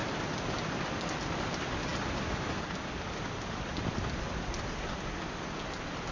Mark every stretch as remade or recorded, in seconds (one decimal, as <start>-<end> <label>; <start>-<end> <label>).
0.0-6.1 recorded